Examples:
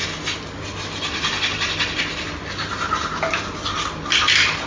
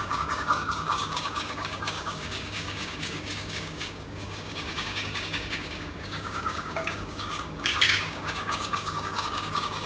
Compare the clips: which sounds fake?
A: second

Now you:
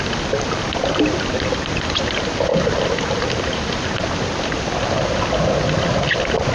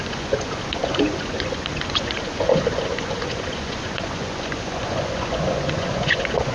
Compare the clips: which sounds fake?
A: second